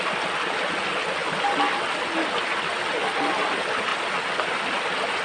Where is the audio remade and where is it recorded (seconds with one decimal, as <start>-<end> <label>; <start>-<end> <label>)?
0.0-5.2 recorded